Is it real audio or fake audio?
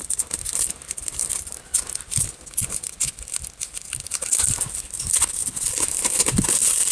real